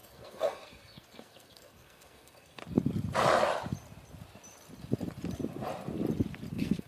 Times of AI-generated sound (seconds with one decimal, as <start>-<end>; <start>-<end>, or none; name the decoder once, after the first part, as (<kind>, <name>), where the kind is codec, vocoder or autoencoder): 0.0-2.6 (codec, SNAC); 6.5-6.9